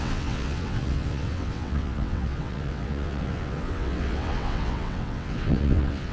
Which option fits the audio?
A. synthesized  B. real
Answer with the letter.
A